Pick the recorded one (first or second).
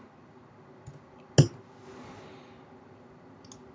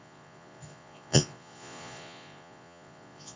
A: first